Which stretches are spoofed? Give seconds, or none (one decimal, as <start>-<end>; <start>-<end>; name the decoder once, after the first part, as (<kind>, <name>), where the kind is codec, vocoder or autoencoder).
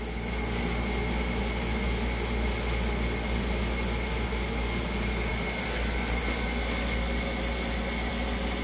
none